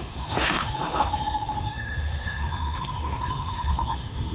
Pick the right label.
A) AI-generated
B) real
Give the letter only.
A